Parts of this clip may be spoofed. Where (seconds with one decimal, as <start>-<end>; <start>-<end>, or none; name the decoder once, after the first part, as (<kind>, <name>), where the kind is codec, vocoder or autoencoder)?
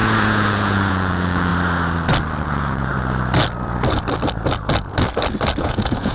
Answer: 0.0-1.5 (vocoder, Vocos); 2.4-2.9; 5.6-6.1